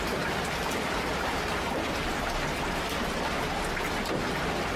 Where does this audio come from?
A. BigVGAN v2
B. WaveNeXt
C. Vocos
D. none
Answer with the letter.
D